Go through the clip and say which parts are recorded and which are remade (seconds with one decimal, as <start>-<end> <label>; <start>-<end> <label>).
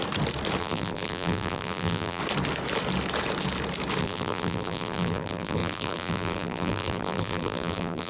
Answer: 0.0-0.6 recorded; 0.6-2.2 remade; 2.2-4.0 recorded; 4.0-8.1 remade